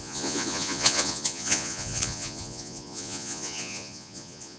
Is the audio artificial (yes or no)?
yes